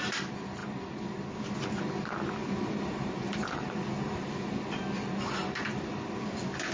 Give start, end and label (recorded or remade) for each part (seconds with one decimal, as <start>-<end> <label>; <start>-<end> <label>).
0.0-2.4 recorded; 2.4-4.5 remade; 4.5-6.7 recorded